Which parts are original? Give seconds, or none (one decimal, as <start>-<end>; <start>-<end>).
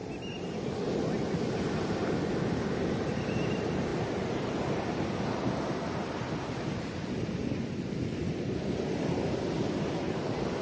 0.0-10.6